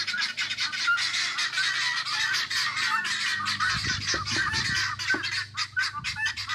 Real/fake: real